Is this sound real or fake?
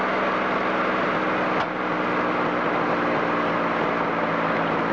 real